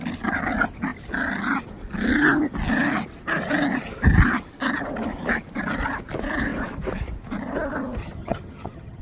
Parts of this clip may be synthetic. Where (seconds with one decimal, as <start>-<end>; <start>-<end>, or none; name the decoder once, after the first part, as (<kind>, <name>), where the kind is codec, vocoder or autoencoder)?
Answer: 8.0-9.0 (vocoder, HiFi-GAN)